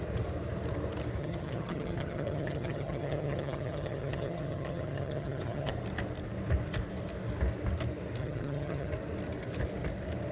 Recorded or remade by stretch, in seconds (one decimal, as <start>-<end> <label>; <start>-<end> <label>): 0.0-1.2 recorded; 1.2-5.7 remade; 5.7-8.2 recorded; 8.2-8.9 remade; 8.9-10.3 recorded